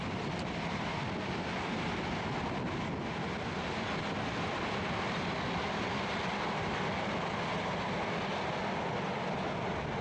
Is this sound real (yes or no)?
yes